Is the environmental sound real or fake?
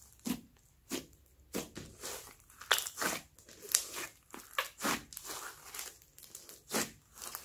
real